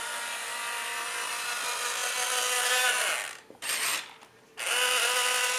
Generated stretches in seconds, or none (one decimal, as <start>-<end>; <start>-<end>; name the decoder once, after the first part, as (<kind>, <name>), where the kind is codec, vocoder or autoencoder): none